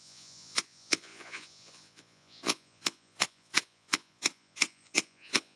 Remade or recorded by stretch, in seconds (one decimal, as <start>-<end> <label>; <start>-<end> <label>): 0.0-5.6 remade